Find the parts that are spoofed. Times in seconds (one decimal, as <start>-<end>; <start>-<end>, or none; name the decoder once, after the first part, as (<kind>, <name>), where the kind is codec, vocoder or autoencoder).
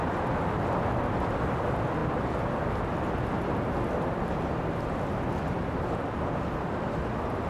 none